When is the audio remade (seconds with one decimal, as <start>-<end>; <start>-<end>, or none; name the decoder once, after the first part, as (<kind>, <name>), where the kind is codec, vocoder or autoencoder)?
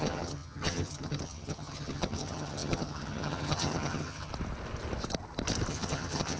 0.0-4.3 (vocoder, HiFi-GAN); 5.7-6.4